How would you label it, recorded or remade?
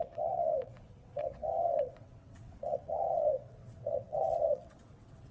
remade